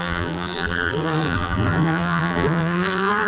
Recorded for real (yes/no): no